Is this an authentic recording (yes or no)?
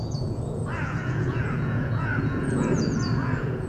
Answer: no